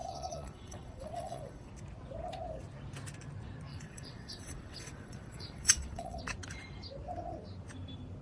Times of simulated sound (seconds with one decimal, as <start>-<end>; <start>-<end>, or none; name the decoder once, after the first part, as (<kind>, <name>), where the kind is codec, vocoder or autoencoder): 0.0-1.7 (vocoder, WaveNeXt); 3.7-6.2